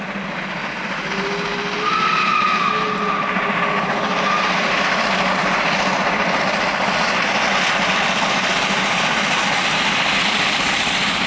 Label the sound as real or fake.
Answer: real